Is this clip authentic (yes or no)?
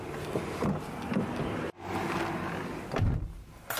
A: yes